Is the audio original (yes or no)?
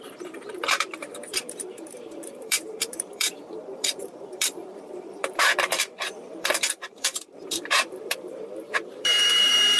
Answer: no